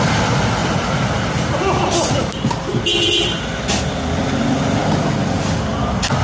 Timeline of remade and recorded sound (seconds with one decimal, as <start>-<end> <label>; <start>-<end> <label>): 0.0-6.2 recorded